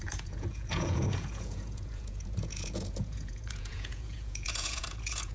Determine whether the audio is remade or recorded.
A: remade